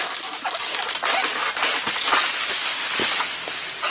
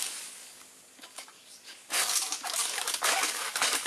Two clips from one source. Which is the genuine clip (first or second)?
first